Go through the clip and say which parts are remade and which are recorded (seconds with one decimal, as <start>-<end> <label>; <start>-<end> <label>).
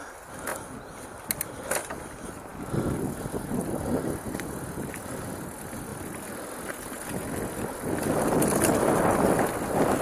0.0-10.0 recorded